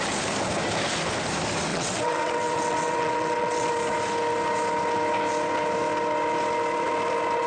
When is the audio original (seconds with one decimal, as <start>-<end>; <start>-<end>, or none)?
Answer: 0.0-1.7; 3.7-7.5